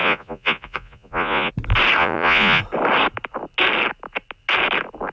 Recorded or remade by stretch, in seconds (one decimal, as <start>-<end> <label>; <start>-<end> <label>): 0.0-1.5 remade; 1.5-2.0 recorded; 2.0-2.6 remade; 2.6-5.1 recorded

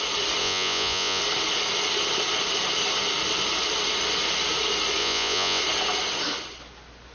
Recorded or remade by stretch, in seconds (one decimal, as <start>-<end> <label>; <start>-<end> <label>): 0.0-0.4 recorded; 0.4-1.2 remade; 1.2-5.0 recorded; 5.0-5.6 remade; 5.6-7.1 recorded

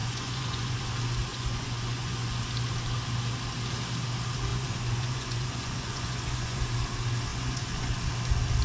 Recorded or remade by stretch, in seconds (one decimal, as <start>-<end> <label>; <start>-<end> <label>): 0.0-0.8 remade; 0.8-1.3 recorded; 1.3-2.4 remade; 2.4-4.5 recorded; 4.5-6.6 remade; 6.6-7.3 recorded; 7.3-8.1 remade; 8.1-8.6 recorded

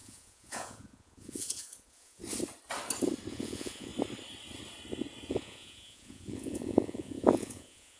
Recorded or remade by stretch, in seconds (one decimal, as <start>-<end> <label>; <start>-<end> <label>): 0.0-2.2 remade; 2.2-3.3 recorded; 3.3-3.9 remade; 3.9-5.3 recorded; 5.3-8.0 remade

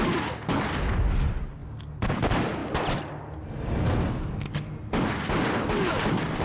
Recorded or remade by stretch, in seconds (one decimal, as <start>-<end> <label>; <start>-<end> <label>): 0.0-6.4 recorded